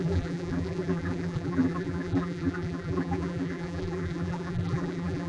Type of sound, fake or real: fake